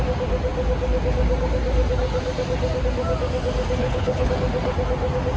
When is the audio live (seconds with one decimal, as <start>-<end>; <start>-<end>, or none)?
0.0-3.8; 4.3-5.4